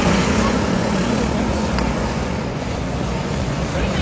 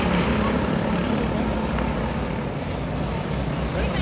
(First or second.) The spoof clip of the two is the first